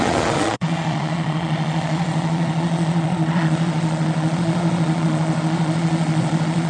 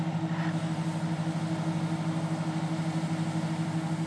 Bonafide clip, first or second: second